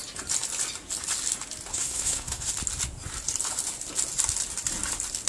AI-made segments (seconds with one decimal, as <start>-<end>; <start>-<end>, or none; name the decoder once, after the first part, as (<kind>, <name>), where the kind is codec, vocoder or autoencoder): 1.7-2.5 (codec, SNAC)